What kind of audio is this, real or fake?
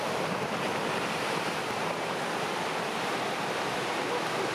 real